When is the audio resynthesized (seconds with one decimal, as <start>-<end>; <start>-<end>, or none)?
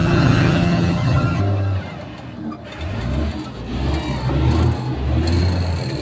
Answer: 0.0-1.4